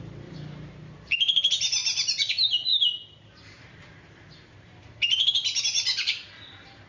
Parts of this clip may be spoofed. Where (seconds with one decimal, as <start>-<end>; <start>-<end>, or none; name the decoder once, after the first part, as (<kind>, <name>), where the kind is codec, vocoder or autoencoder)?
0.0-1.8 (vocoder, BigVGAN v2); 2.3-6.9